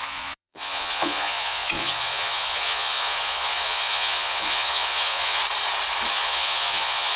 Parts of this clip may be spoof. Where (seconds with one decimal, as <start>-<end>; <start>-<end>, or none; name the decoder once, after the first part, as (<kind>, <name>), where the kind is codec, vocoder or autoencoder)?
0.0-5.4 (vocoder, Vocos); 6.1-7.2